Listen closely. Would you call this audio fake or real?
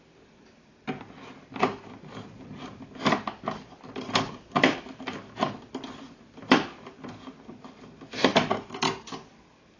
real